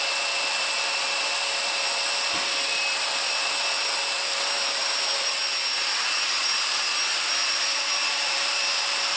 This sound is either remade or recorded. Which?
remade